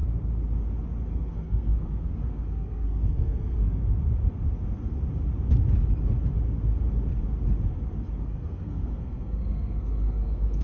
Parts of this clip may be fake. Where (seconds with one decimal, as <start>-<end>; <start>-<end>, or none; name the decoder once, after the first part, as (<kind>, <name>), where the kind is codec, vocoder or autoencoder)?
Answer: 1.1-3.8 (codec, SNAC); 8.2-10.6